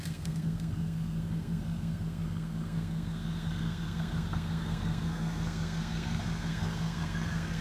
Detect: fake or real fake